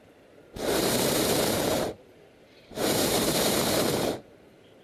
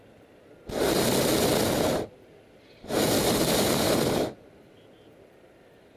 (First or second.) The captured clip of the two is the second